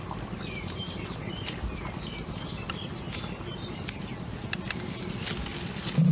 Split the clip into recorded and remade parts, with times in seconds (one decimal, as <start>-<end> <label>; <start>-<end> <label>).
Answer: 0.0-1.3 remade; 1.3-6.1 recorded